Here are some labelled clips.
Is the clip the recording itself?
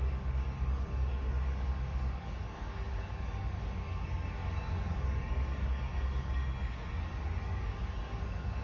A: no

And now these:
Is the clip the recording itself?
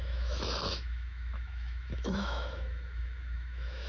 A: no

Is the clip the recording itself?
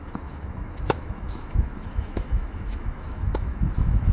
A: no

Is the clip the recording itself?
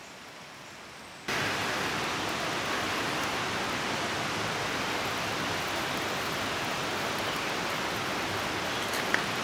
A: yes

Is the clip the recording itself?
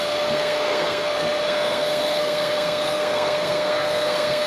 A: no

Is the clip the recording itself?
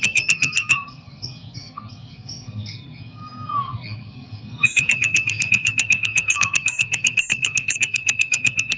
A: no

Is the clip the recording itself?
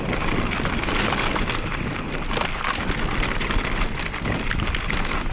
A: yes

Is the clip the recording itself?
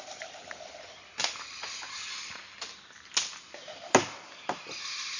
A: yes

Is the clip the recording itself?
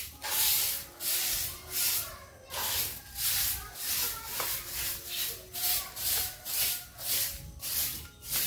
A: yes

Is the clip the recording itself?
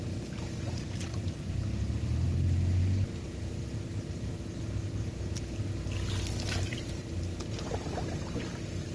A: yes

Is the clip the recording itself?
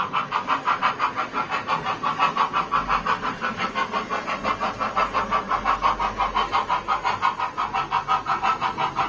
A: yes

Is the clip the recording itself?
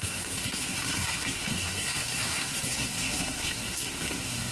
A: no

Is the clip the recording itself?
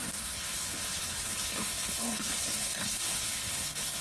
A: no